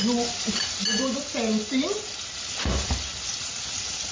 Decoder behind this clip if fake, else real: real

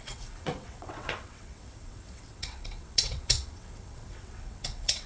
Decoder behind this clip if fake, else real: fake, vocoder, WaveNeXt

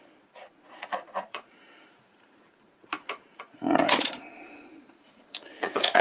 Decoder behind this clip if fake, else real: fake, vocoder, Vocos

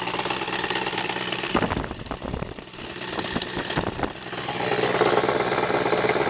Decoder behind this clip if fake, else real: real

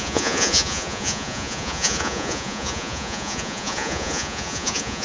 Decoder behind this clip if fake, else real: fake, vocoder, Vocos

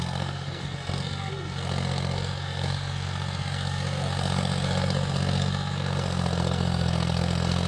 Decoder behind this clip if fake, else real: fake, codec, SNAC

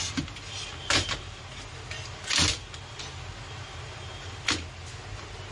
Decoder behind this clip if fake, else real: real